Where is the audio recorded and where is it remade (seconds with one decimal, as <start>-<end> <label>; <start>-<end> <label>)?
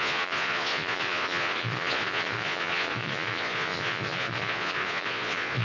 0.0-5.6 remade